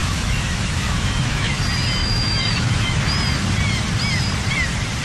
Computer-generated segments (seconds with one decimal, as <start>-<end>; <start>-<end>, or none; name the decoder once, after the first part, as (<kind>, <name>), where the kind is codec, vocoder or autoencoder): 0.0-1.5 (autoencoder, DAC-VAE); 2.0-3.0